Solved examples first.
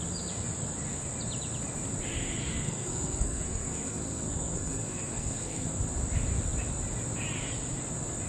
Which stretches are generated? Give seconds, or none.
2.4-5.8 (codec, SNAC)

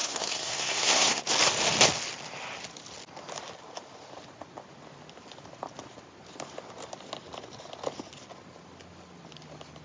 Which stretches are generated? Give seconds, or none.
0.0-1.2 (codec, SNAC)

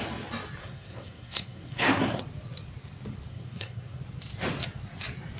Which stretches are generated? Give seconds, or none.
0.6-2.2 (codec, SNAC); 3.3-4.0

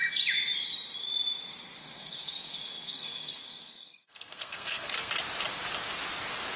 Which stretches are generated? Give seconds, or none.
1.8-5.1 (codec, SNAC)